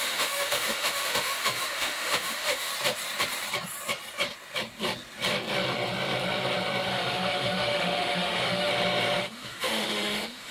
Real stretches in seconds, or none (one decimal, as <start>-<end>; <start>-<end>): 2.7-6.9; 8.7-9.2